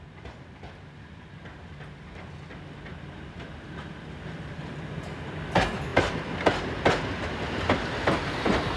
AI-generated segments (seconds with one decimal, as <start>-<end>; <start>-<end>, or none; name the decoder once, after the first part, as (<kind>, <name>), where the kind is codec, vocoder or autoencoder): none